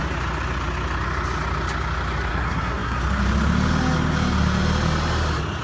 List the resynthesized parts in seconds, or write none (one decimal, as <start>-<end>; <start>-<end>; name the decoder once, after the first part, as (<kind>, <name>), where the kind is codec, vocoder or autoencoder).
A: 2.3-3.0 (codec, SNAC)

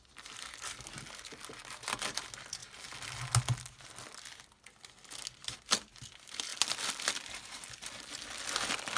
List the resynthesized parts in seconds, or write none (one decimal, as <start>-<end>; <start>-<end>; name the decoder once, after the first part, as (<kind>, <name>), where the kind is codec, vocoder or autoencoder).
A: none

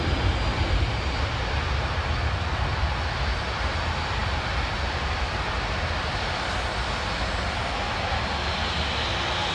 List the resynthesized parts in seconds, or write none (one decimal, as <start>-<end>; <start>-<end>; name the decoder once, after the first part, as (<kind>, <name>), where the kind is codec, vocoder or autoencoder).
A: none

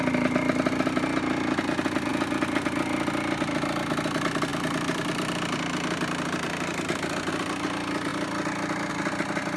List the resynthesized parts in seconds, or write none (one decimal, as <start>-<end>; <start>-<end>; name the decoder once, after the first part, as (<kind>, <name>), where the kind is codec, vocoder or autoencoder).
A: 4.5-7.3 (vocoder, BigVGAN v2)

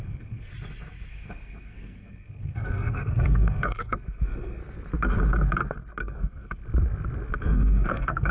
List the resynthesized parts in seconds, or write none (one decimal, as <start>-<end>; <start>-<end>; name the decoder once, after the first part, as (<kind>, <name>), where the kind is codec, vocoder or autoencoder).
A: 0.0-0.5 (codec, SNAC); 1.1-4.6; 6.0-6.6; 7.4-8.3